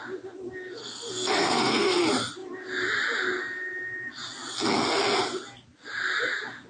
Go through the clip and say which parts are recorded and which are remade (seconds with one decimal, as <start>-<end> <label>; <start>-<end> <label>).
0.0-0.8 recorded; 0.8-2.0 remade; 2.0-6.7 recorded